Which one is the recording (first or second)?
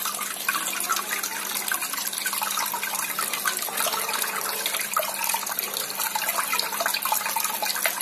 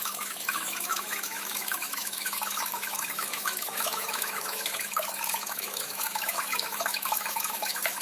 first